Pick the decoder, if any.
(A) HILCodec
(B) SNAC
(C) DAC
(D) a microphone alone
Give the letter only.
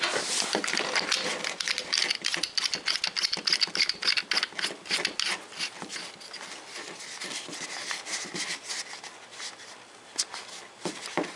D